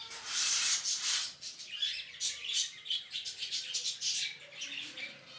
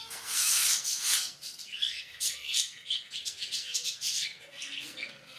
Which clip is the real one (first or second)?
first